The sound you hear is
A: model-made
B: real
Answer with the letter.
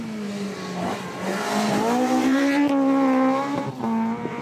B